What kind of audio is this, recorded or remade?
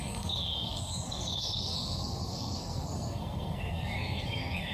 remade